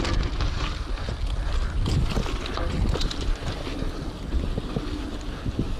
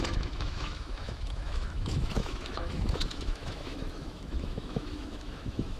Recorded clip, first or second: first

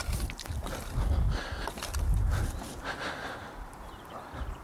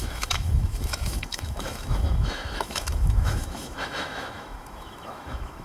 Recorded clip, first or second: first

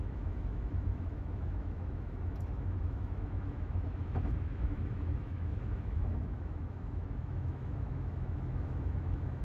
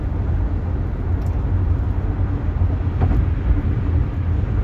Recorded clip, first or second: second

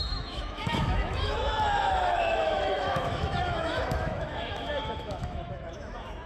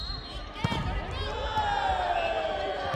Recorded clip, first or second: second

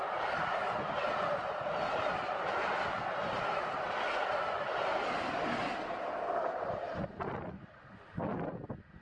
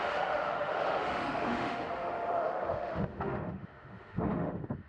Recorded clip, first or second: first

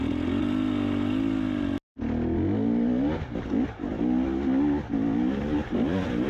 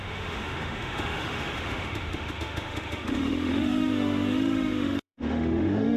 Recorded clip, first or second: first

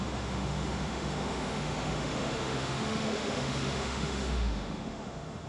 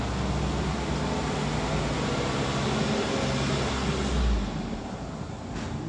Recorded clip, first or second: second